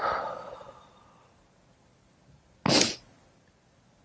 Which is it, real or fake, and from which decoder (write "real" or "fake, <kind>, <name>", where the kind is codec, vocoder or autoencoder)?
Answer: real